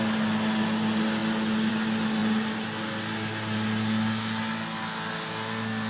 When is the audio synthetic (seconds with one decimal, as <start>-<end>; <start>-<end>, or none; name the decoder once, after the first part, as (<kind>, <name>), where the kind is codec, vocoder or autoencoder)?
none